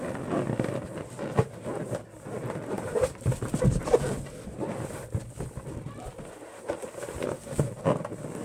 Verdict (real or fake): real